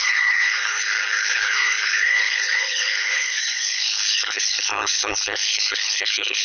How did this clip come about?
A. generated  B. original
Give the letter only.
A